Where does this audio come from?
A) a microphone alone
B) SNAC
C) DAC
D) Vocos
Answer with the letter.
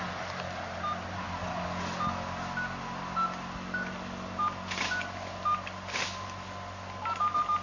A